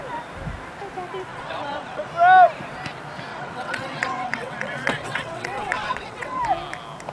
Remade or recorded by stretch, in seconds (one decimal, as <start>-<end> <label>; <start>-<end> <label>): 0.0-1.3 recorded; 1.3-2.1 remade; 2.1-3.3 recorded; 3.3-6.4 remade; 6.4-7.1 recorded